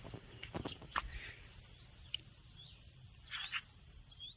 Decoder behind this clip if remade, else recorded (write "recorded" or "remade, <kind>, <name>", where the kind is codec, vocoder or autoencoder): recorded